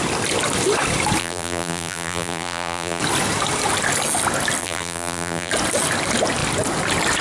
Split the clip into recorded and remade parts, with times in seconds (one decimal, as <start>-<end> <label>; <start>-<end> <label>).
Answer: 0.0-1.2 recorded; 1.2-3.0 remade; 3.0-4.6 recorded; 4.6-5.5 remade; 5.5-7.2 recorded